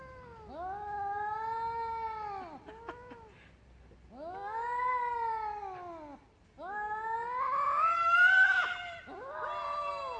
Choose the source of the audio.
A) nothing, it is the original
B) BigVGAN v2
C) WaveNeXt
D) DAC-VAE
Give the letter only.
A